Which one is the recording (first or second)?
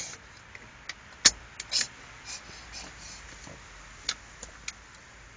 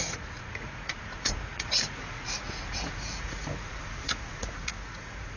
first